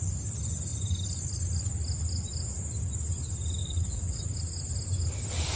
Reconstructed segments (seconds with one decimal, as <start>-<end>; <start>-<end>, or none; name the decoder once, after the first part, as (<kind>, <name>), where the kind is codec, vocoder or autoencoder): 3.6-4.2 (vocoder, WaveNeXt)